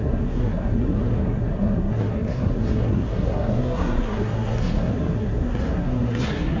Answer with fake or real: fake